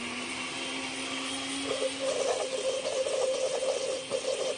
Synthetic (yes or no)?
no